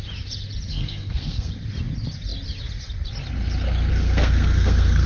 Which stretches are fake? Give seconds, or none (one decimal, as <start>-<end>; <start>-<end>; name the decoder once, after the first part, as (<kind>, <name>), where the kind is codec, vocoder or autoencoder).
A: 0.7-1.5 (codec, SNAC); 3.9-5.1